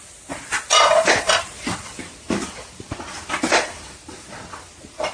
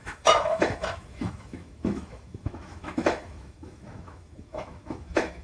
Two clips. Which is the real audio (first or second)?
first